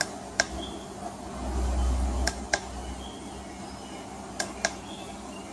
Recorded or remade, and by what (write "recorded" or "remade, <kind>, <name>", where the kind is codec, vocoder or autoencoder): recorded